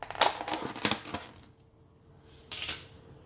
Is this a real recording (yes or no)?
yes